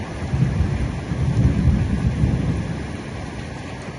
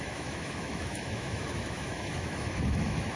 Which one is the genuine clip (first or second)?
first